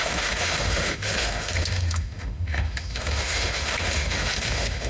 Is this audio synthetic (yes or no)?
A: yes